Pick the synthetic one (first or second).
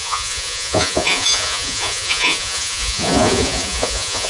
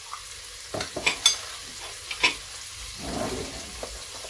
first